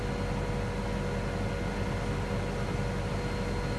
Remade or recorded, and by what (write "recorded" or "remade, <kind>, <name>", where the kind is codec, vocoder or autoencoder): recorded